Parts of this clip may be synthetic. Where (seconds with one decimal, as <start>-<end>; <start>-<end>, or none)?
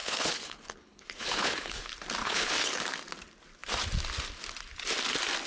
0.0-1.8; 2.2-2.8